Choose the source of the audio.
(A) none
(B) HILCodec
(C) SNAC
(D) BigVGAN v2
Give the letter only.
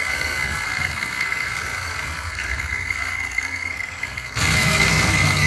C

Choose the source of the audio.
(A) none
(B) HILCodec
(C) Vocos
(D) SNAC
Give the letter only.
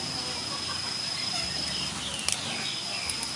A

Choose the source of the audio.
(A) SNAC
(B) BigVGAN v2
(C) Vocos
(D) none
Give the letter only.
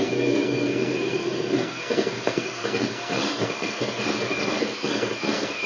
A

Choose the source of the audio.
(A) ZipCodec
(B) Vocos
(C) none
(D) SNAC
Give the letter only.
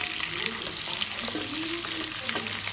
C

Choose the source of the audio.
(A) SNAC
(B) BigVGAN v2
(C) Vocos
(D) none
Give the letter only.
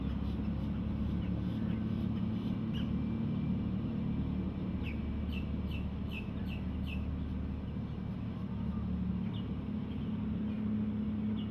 D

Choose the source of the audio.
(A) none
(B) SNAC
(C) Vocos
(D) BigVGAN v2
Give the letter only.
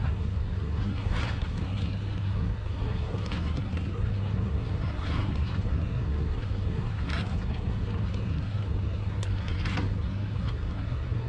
B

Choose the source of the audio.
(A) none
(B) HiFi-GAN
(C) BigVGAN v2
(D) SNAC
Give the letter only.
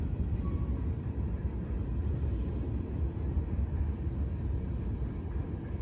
A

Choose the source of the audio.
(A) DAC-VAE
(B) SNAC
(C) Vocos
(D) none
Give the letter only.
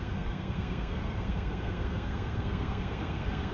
B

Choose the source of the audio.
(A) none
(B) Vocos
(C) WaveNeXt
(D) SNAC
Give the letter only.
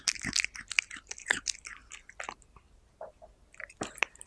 A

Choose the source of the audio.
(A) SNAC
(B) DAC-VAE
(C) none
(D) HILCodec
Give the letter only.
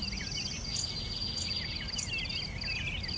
C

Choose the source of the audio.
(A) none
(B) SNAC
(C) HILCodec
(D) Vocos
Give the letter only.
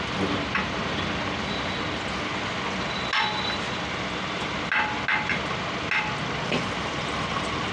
A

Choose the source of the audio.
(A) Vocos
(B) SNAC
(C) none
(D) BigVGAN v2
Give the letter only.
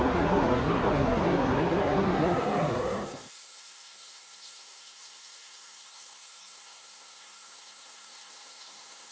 B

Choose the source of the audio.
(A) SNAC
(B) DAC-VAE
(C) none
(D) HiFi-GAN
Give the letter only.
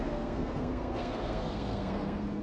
A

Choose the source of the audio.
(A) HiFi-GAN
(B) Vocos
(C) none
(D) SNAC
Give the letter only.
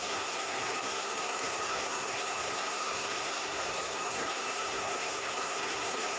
D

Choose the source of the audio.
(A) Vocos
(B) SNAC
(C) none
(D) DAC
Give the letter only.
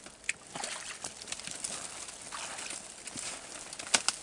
C